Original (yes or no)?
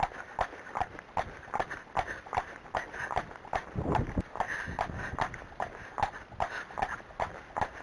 yes